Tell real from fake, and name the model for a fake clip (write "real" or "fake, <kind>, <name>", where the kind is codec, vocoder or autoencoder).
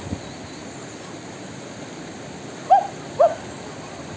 real